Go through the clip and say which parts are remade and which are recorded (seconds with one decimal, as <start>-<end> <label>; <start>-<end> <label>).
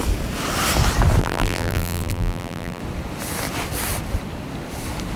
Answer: 0.0-1.2 recorded; 1.2-2.8 remade; 2.8-5.2 recorded